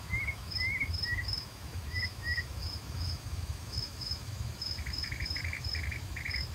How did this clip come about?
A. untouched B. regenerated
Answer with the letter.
B